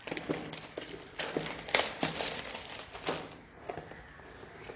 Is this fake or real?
real